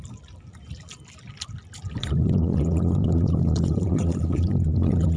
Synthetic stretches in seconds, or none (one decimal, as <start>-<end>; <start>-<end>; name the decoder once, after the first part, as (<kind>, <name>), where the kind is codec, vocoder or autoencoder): 2.0-5.2 (vocoder, Vocos)